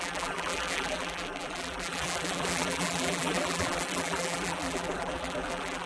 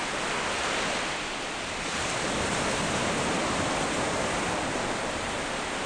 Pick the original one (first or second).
second